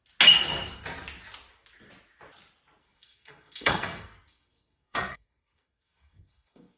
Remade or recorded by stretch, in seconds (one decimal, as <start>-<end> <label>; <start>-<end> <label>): 0.0-2.8 recorded; 2.8-6.8 remade